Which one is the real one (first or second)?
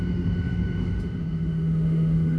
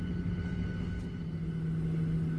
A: second